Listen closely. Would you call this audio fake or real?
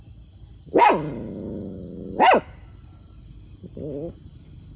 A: real